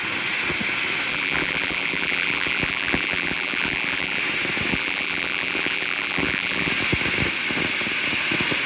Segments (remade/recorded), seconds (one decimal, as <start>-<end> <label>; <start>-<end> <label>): 0.0-1.1 recorded; 1.1-4.2 remade; 4.2-4.7 recorded; 4.7-6.7 remade; 6.7-8.7 recorded